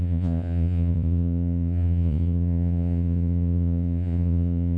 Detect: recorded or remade remade